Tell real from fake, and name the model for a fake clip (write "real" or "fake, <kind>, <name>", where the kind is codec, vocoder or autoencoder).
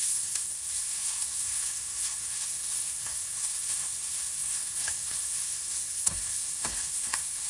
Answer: fake, codec, SNAC